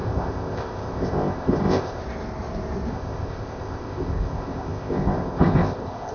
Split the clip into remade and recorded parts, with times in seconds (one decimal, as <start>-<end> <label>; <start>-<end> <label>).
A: 0.0-2.0 remade; 2.0-2.9 recorded; 2.9-6.1 remade